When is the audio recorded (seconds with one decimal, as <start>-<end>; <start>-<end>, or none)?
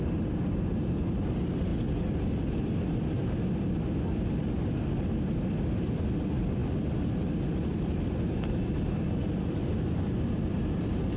0.0-11.2